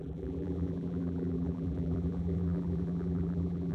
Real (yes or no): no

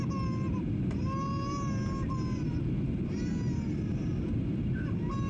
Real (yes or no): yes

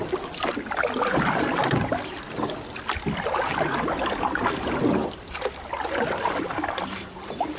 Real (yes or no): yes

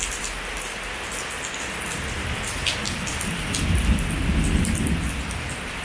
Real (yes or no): yes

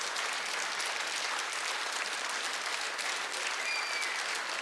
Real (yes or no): yes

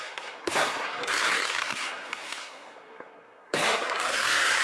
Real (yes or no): no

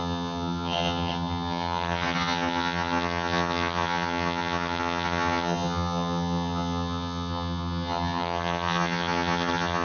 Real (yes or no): no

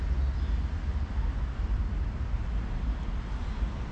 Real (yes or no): yes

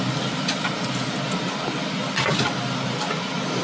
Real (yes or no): yes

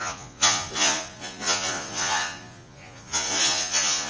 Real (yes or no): no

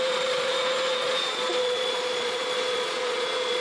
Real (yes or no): no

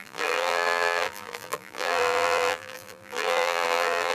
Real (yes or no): no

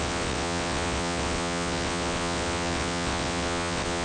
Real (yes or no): no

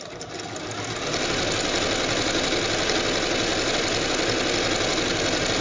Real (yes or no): yes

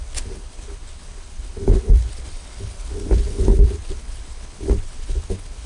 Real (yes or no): no